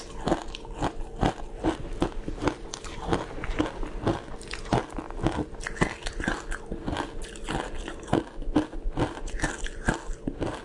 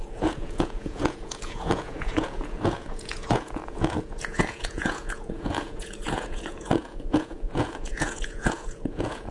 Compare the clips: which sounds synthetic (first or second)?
second